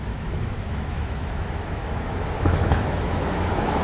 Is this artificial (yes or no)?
yes